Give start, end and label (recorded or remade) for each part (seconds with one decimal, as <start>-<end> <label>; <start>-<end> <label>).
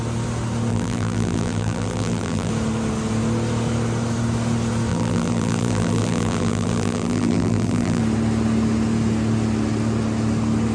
0.0-0.7 recorded; 0.7-2.5 remade; 2.5-4.9 recorded; 4.9-8.0 remade; 8.0-10.7 recorded